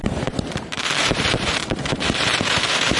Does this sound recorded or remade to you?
remade